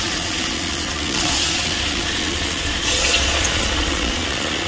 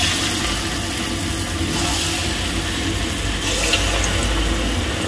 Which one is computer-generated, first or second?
first